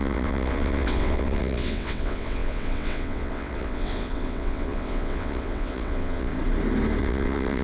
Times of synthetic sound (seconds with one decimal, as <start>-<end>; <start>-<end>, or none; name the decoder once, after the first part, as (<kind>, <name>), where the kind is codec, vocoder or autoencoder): 0.0-6.3 (vocoder, WaveNeXt); 7.0-7.6